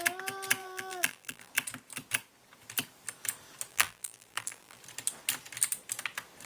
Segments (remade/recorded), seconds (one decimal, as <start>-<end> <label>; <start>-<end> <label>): 0.0-0.6 recorded; 0.6-1.5 remade; 1.5-3.7 recorded; 3.7-4.8 remade; 4.8-6.5 recorded